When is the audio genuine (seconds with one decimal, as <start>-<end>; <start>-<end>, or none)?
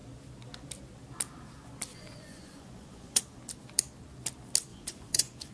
0.0-1.9; 3.2-4.7